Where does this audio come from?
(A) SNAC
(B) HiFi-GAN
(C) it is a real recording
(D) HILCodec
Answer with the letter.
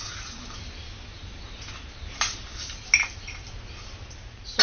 C